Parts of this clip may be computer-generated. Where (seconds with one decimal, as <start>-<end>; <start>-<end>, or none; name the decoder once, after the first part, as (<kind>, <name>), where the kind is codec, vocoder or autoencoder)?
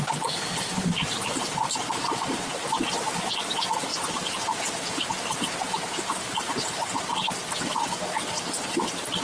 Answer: none